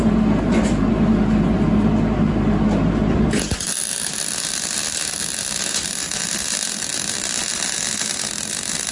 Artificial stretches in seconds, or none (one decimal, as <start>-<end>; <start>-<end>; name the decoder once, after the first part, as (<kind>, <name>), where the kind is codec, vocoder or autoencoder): none